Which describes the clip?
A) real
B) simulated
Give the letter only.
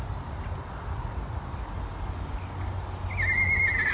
A